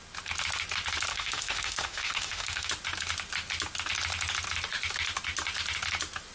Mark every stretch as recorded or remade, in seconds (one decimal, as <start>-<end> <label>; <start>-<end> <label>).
0.0-1.1 recorded; 1.1-2.7 remade; 2.7-6.3 recorded